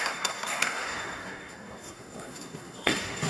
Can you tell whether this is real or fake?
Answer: fake